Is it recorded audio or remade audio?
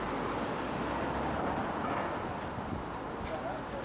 recorded